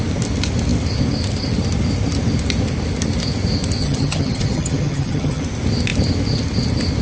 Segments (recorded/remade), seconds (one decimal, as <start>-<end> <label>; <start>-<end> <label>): 0.0-3.8 recorded; 3.8-5.4 remade; 5.4-7.0 recorded